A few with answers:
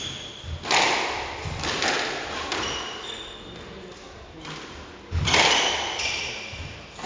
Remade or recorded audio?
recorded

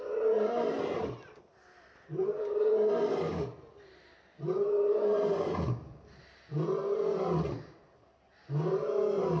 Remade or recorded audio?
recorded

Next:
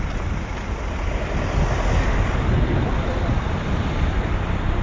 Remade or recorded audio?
recorded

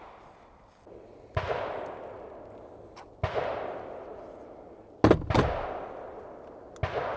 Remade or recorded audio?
recorded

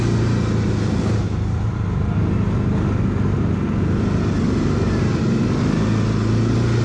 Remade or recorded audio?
recorded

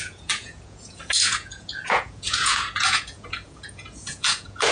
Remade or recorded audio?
remade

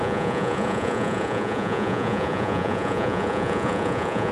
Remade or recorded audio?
remade